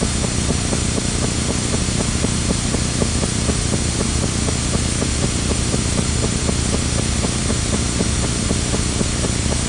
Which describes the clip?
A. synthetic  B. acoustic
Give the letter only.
A